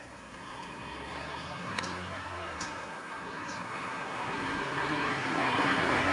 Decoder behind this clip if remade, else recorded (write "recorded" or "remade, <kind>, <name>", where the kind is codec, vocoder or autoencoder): remade, codec, SNAC